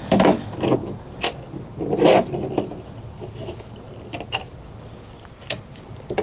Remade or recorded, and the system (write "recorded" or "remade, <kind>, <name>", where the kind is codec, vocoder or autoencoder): recorded